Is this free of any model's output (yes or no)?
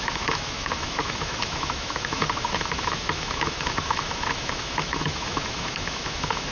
no